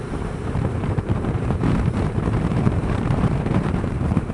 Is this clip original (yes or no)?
no